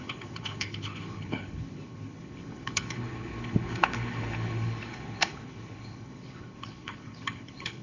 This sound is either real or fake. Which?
fake